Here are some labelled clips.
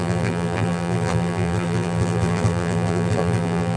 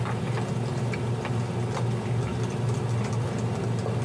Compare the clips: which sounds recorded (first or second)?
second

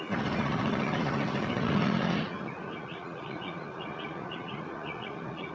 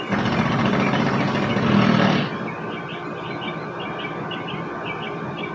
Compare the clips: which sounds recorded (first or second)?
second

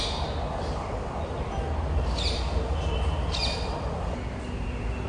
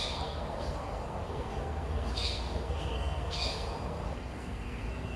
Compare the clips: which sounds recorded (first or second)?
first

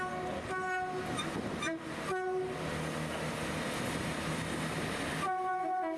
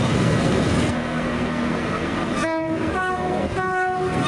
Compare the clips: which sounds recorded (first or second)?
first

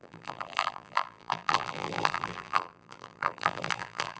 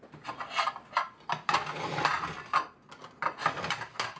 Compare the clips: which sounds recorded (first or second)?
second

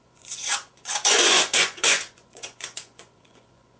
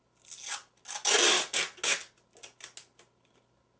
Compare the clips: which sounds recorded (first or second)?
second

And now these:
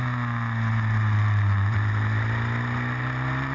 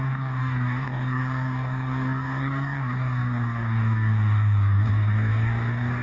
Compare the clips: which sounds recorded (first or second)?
first